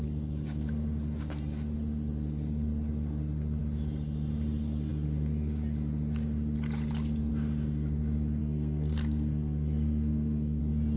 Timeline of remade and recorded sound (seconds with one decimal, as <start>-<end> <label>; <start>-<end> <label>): 0.0-8.4 recorded; 8.4-10.6 remade; 10.6-11.0 recorded